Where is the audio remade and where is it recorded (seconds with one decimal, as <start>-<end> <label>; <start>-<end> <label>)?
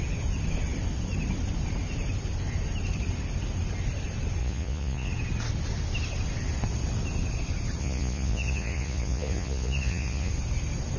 0.0-4.4 recorded; 4.4-5.1 remade; 5.1-7.8 recorded; 7.8-10.3 remade; 10.3-11.0 recorded